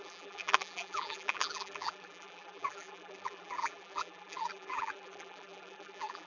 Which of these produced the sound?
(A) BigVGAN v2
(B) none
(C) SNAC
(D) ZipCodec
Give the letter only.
A